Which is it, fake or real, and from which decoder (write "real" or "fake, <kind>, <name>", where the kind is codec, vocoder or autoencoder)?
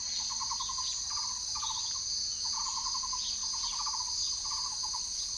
real